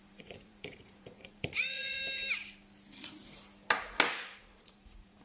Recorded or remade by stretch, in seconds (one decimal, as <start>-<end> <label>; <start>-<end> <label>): 0.0-2.0 remade; 2.0-4.1 recorded; 4.1-5.2 remade